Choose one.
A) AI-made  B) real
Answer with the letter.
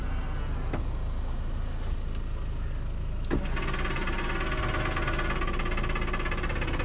B